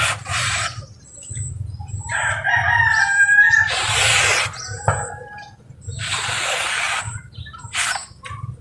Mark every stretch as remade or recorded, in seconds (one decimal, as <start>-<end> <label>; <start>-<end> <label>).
0.0-4.3 remade; 4.3-5.8 recorded; 5.8-8.6 remade